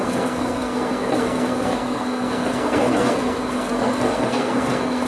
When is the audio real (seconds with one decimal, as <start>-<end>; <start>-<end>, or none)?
none